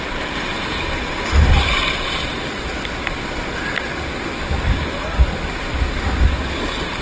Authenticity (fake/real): real